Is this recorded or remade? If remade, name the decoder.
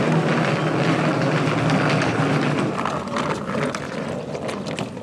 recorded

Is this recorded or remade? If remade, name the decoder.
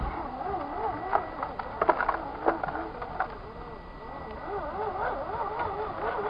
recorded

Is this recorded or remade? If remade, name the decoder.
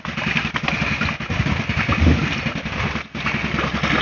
recorded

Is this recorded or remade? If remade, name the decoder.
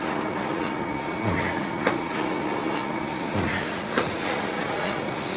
remade, vocoder, Vocos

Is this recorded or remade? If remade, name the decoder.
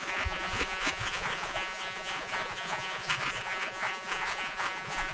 remade, vocoder, Vocos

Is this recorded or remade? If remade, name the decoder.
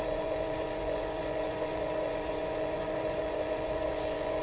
remade, vocoder, Vocos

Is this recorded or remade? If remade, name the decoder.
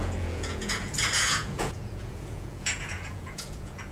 remade, vocoder, Vocos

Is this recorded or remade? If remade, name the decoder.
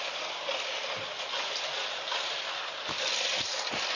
recorded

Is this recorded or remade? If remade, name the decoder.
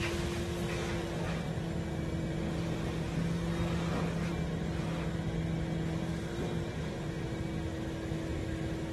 recorded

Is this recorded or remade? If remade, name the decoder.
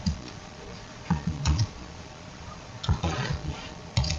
remade, vocoder, Vocos